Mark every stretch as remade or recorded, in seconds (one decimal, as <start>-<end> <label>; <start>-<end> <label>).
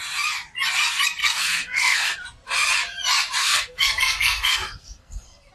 0.0-1.2 recorded; 1.2-2.1 remade; 2.1-3.4 recorded; 3.4-5.5 remade